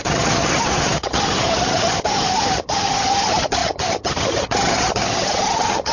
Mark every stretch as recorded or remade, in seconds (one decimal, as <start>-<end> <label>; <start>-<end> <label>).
0.0-5.9 remade